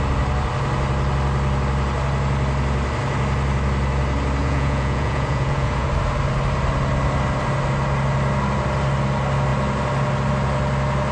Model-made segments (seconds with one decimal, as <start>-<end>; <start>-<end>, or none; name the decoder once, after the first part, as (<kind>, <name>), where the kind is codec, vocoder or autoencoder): 4.4-5.9 (vocoder, Vocos)